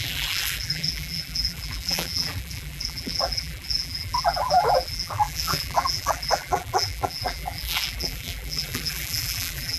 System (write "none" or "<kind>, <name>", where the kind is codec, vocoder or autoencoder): vocoder, BigVGAN v2